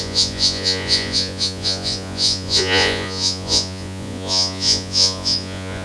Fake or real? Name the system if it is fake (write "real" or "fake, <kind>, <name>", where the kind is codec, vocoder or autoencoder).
fake, vocoder, Vocos